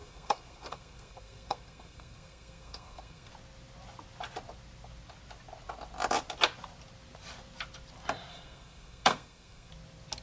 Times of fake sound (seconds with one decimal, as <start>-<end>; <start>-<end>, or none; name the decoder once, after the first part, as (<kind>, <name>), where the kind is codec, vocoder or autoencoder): 0.0-3.3 (codec, SNAC); 8.3-9.7